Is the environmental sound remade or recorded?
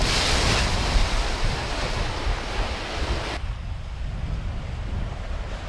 recorded